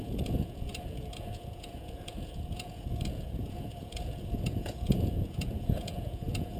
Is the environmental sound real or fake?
fake